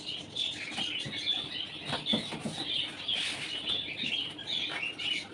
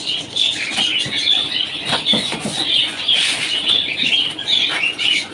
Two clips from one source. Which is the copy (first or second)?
second